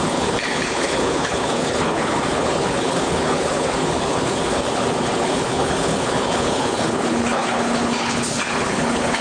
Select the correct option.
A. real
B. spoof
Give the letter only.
B